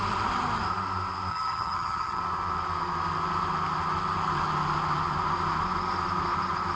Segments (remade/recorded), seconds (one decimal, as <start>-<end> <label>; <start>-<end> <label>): 0.0-1.3 recorded; 1.3-2.2 remade; 2.2-6.8 recorded